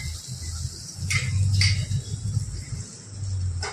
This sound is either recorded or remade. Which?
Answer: recorded